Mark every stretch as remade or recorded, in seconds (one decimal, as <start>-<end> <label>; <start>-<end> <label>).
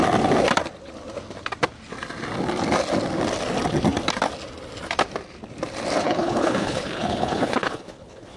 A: 0.0-6.0 recorded; 6.0-8.4 remade